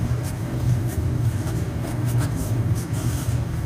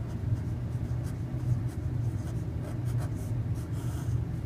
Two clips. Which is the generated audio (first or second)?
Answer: first